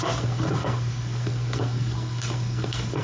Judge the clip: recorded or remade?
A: remade